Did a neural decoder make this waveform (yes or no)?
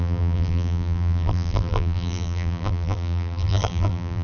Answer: yes